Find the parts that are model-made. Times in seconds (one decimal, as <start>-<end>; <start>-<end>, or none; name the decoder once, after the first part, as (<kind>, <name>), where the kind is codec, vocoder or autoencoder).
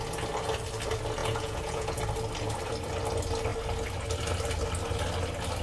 1.2-2.0 (vocoder, Vocos)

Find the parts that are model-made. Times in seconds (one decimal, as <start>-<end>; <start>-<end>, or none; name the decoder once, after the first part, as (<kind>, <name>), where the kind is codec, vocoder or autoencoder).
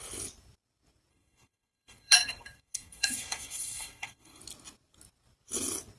1.1-4.4 (codec, SNAC)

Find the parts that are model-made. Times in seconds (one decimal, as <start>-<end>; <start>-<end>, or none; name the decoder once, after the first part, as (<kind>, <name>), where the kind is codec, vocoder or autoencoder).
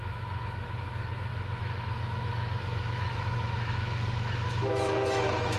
0.0-5.6 (autoencoder, DAC-VAE)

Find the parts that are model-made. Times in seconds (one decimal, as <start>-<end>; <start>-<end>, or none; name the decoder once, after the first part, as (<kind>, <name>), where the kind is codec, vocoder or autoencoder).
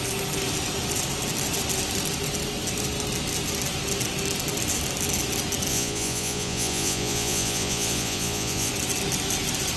5.7-8.7 (vocoder, Vocos)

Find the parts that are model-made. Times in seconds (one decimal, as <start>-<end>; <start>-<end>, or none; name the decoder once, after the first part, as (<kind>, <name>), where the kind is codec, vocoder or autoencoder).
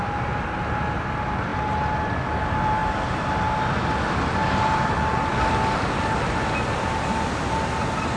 none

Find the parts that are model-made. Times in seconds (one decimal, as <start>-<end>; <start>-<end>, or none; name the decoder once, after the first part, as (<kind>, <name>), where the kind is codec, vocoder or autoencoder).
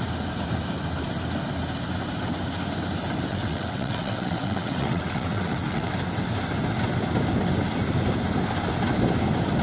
3.3-5.9 (vocoder, WaveNeXt)